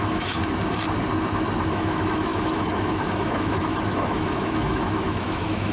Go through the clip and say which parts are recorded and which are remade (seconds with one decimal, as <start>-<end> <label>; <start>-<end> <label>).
0.0-0.4 remade; 0.4-1.7 recorded; 1.7-5.7 remade